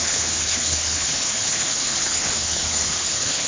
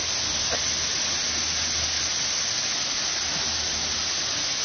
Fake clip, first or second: first